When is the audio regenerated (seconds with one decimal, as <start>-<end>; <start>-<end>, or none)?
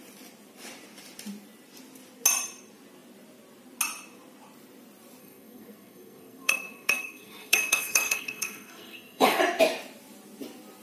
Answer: 5.2-9.4